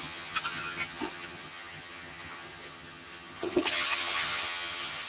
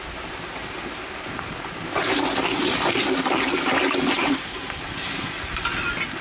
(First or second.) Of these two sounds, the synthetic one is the first